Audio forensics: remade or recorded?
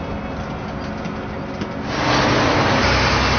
recorded